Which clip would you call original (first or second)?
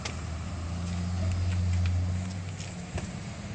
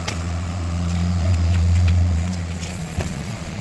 first